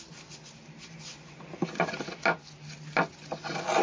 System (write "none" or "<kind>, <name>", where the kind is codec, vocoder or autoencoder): none